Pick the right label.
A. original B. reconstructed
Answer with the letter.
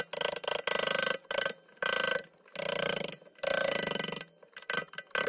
A